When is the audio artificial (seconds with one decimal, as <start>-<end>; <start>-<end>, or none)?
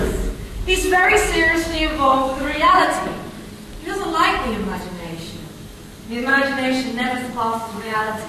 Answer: 0.0-2.8; 4.9-6.3; 7.3-8.3